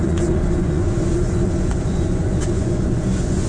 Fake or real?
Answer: fake